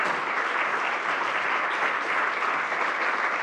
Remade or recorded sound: recorded